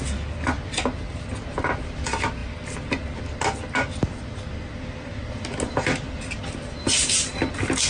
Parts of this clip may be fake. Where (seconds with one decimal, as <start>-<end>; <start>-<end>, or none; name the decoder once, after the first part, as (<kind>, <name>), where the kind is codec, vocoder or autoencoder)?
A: none

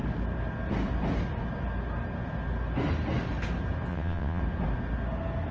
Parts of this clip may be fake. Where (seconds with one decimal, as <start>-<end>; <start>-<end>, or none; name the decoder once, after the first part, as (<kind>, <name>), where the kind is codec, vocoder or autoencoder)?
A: 3.9-4.4 (vocoder, WaveNeXt)

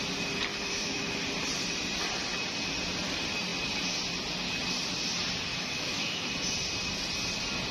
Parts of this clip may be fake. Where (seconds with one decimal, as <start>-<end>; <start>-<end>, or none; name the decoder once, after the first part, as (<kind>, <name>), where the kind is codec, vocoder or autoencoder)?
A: 0.5-1.2 (autoencoder, DAC-VAE); 5.5-6.3

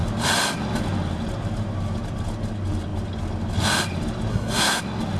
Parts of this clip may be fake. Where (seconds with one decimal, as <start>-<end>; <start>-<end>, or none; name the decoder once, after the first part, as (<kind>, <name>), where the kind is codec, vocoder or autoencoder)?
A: 4.3-4.8 (codec, SNAC)

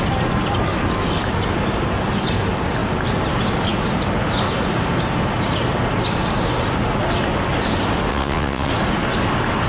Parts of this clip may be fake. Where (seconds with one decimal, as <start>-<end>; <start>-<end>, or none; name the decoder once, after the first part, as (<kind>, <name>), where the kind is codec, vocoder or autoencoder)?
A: 8.1-8.7 (vocoder, WaveNeXt)

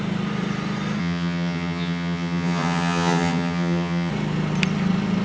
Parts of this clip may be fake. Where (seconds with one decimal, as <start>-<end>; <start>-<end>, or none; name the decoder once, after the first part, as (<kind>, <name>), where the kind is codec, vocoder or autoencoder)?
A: 1.0-4.1 (vocoder, HiFi-GAN)